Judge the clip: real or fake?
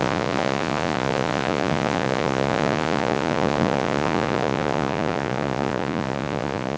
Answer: fake